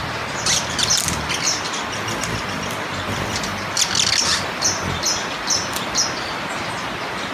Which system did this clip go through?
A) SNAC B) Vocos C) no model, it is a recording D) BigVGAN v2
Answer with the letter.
C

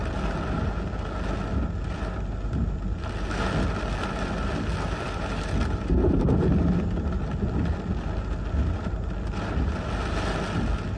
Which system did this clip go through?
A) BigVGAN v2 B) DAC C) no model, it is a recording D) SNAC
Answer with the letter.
C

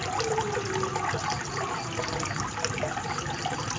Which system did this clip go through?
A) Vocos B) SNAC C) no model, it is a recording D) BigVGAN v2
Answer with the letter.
C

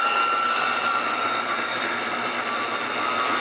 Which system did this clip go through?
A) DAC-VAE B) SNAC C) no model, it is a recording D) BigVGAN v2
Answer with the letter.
C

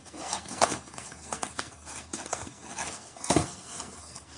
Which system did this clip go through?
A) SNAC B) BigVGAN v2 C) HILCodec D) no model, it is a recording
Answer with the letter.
A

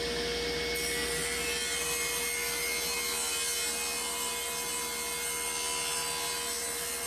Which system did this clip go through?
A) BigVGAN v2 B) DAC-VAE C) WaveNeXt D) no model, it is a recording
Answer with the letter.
D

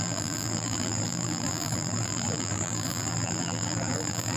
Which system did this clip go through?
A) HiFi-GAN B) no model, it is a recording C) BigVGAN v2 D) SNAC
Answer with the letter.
C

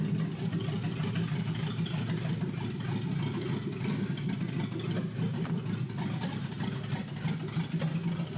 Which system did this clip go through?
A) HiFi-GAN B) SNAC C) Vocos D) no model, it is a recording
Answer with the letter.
D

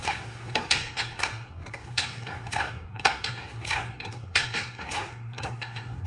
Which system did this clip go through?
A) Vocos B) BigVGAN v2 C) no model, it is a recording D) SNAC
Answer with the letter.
D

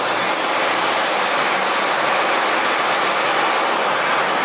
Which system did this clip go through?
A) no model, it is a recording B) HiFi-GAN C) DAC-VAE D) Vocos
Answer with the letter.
A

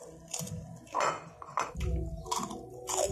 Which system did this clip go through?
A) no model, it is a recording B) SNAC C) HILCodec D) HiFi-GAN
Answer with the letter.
A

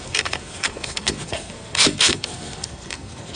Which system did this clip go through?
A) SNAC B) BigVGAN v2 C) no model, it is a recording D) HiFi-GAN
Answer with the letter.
A